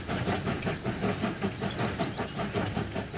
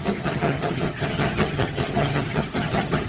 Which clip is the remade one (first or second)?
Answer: second